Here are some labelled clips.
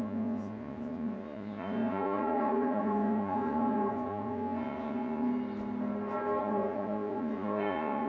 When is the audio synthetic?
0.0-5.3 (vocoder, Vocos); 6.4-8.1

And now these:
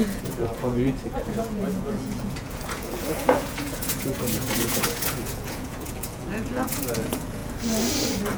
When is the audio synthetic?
0.0-7.4 (vocoder, Vocos)

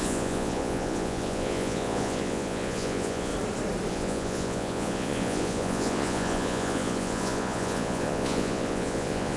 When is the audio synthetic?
0.0-3.3 (vocoder, Vocos); 3.9-9.4

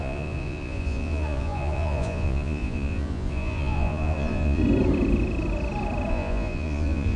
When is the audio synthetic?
0.0-4.6 (vocoder, Vocos); 6.1-7.2

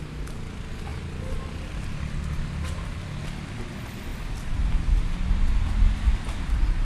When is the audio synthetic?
none